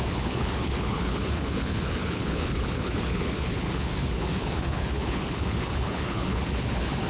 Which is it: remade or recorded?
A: remade